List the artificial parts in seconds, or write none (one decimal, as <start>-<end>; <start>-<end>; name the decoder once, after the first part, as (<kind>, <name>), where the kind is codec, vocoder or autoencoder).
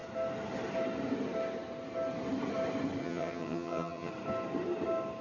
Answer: 3.0-4.1 (vocoder, HiFi-GAN)